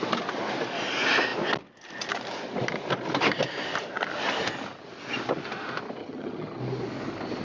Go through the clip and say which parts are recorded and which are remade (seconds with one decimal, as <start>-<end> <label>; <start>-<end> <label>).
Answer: 0.0-6.0 recorded; 6.0-6.6 remade; 6.6-7.4 recorded